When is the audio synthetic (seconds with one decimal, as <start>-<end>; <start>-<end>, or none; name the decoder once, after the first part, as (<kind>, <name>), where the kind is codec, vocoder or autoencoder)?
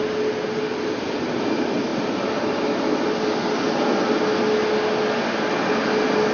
none